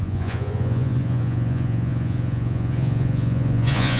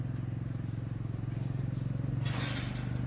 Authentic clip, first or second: second